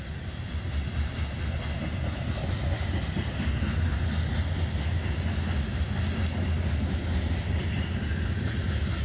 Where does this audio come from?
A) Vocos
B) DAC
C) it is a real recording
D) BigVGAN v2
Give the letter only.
C